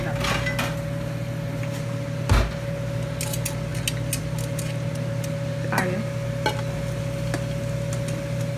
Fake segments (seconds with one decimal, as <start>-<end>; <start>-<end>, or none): none